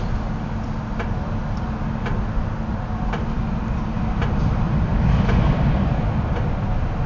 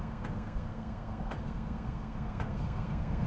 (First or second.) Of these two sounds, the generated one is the second